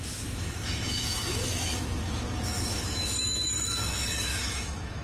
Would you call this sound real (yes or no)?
no